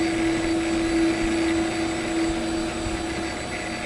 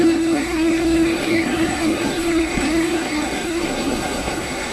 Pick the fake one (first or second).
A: second